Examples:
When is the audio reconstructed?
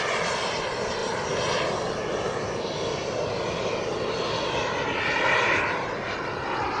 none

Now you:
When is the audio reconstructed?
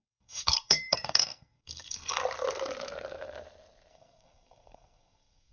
0.0-2.2 (codec, SNAC); 3.9-5.5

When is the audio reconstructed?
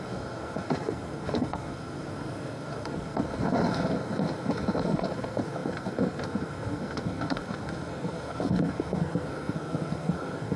0.0-10.6 (codec, SNAC)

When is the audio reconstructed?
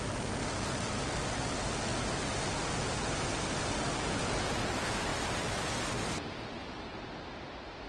none